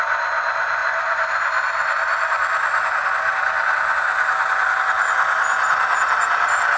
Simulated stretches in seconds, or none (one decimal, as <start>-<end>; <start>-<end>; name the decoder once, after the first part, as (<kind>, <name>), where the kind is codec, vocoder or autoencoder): none